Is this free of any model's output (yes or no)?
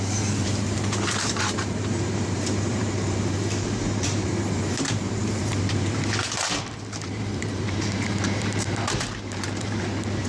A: no